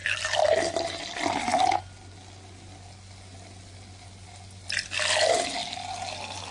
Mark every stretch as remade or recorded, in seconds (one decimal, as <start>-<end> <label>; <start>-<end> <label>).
0.0-6.5 recorded